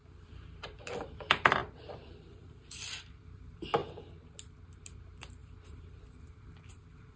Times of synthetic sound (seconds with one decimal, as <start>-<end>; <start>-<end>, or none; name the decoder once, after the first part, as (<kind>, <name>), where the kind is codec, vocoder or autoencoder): 0.0-3.8 (vocoder, BigVGAN v2); 4.9-7.2